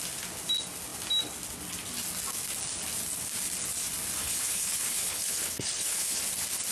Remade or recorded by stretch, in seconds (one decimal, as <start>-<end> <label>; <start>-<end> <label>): 0.0-4.2 recorded; 4.2-6.2 remade; 6.2-6.7 recorded